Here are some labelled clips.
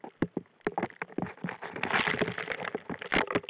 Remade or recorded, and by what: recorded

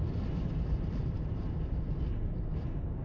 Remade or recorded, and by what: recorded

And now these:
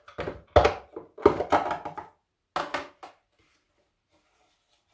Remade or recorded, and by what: recorded